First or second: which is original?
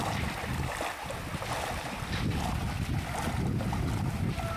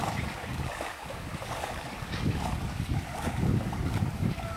first